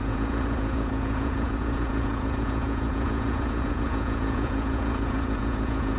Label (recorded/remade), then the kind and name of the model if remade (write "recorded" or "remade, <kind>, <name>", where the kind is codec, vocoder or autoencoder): remade, vocoder, Vocos